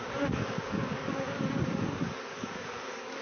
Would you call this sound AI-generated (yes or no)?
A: yes